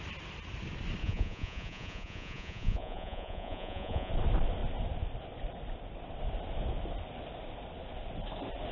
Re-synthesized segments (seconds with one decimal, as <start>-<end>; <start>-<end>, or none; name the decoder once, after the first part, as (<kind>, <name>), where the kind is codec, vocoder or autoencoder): 1.0-4.1 (vocoder, Vocos)